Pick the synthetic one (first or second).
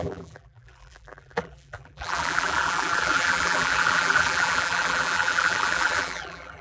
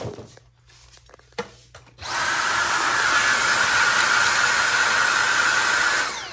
first